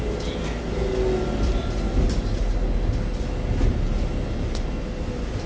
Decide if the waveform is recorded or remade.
recorded